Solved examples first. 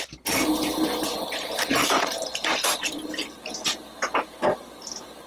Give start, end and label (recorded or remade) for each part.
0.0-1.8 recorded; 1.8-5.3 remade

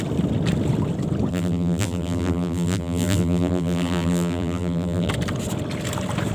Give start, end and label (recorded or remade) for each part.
0.0-1.3 recorded; 1.3-5.1 remade; 5.1-6.3 recorded

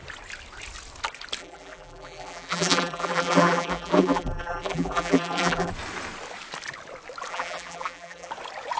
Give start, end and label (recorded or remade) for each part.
0.0-1.4 recorded; 1.4-5.7 remade; 5.7-7.3 recorded; 7.3-8.3 remade; 8.3-8.8 recorded

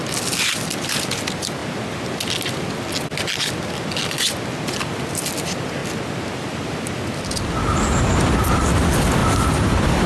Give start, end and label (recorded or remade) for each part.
0.0-9.2 recorded; 9.2-10.1 remade